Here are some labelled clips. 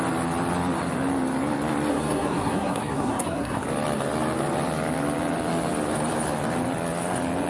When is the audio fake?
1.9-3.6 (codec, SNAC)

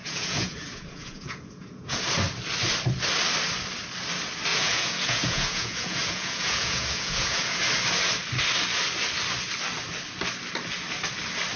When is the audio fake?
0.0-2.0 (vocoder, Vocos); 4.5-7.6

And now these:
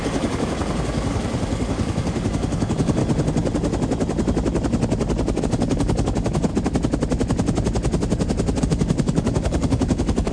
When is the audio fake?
0.0-3.0 (codec, DAC); 5.4-6.5; 8.6-10.3

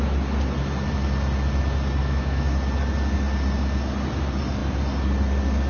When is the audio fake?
2.0-2.5 (autoencoder, DAC-VAE)

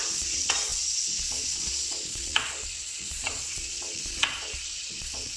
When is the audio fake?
0.0-5.4 (vocoder, Vocos)

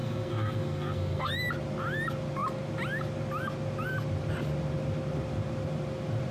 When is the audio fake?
0.0-1.3 (codec, SNAC)